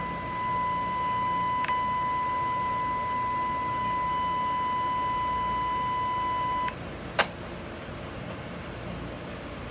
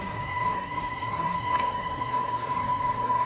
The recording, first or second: first